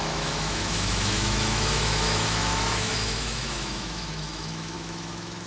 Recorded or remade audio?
remade